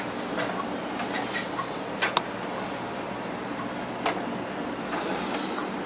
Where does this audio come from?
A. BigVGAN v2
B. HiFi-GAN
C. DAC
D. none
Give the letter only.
D